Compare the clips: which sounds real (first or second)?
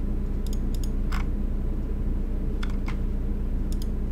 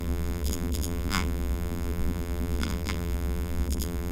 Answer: first